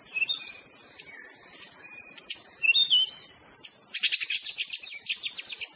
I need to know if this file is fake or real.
real